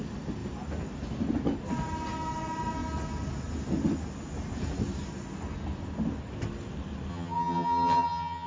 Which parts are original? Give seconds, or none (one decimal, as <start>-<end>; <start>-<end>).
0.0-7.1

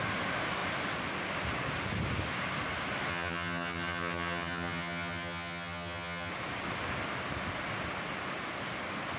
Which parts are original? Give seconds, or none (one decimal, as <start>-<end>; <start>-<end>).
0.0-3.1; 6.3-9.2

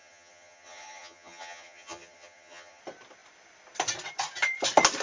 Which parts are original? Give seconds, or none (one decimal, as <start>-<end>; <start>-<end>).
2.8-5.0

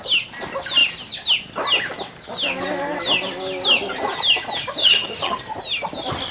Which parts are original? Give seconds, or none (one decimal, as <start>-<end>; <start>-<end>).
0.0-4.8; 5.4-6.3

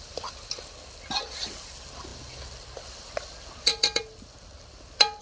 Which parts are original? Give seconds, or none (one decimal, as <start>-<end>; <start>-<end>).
0.0-5.2

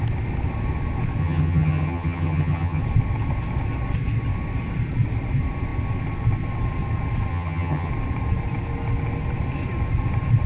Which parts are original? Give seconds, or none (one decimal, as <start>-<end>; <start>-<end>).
0.0-1.2; 2.8-7.3; 7.9-10.5

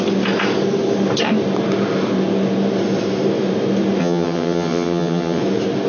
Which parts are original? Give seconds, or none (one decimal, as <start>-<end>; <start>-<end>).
0.0-4.0; 5.4-5.9

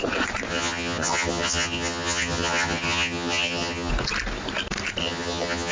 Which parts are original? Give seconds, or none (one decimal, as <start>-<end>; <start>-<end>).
0.0-0.5; 3.9-5.0